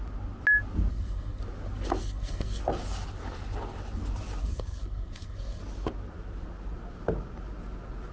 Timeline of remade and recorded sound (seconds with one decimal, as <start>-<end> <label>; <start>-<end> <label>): 0.0-0.9 recorded; 0.9-1.4 remade; 1.4-2.0 recorded; 2.0-2.6 remade; 2.6-4.4 recorded; 4.4-5.6 remade; 5.6-8.1 recorded